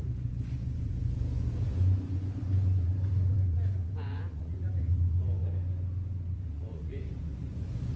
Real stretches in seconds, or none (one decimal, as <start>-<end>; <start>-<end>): 5.4-6.3